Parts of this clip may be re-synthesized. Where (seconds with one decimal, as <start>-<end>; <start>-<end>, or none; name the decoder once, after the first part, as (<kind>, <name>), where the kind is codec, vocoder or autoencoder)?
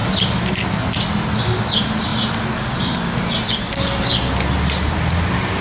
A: none